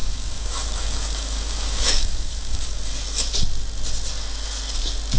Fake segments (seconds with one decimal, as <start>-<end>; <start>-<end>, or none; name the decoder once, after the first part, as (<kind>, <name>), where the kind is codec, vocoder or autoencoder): 0.0-2.8 (codec, DAC)